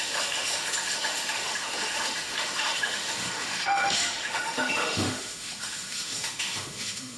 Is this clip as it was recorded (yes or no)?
no